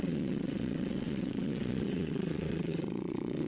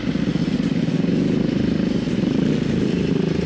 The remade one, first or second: first